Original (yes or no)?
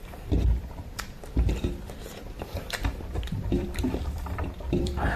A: no